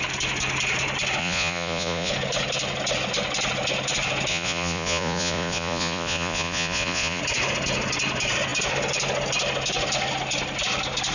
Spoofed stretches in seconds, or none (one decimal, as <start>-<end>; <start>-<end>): 1.2-2.1; 4.3-7.2